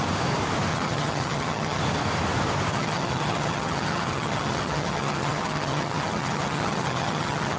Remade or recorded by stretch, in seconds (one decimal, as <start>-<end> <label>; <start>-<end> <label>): 0.0-0.7 recorded; 0.7-1.8 remade; 1.8-2.7 recorded; 2.7-7.6 remade